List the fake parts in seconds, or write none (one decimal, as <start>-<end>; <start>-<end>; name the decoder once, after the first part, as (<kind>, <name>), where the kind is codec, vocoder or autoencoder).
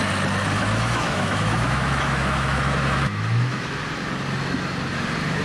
0.6-3.8 (autoencoder, DAC-VAE)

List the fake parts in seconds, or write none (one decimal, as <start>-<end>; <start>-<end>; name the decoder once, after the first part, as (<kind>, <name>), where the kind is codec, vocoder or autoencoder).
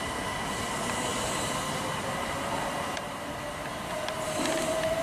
none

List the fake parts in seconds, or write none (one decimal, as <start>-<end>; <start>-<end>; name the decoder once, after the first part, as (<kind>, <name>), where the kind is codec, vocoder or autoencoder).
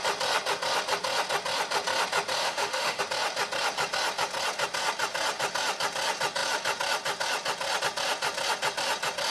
2.4-3.0 (autoencoder, DAC-VAE)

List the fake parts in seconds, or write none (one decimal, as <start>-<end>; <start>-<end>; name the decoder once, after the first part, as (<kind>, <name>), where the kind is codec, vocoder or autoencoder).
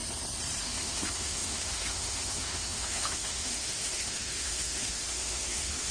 0.6-5.9 (autoencoder, DAC-VAE)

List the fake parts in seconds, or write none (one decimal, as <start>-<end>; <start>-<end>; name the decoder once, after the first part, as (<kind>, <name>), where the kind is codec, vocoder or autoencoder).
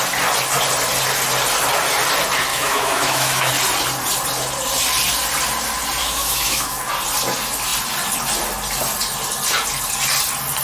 2.5-3.5 (autoencoder, DAC-VAE); 6.0-6.8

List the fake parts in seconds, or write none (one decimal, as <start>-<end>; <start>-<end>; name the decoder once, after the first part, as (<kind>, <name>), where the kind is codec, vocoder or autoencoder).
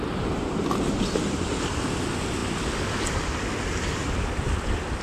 none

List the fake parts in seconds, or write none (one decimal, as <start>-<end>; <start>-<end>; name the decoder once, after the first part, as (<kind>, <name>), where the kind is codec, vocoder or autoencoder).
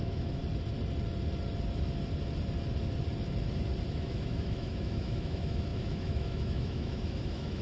0.0-0.4 (autoencoder, DAC-VAE); 3.9-7.6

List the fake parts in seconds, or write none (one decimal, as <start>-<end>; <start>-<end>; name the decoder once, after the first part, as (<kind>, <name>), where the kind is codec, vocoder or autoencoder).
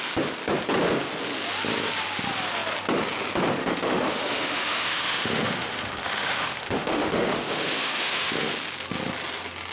3.6-8.5 (autoencoder, DAC-VAE)